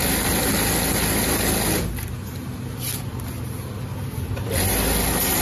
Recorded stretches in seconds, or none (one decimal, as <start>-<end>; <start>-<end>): 0.5-5.4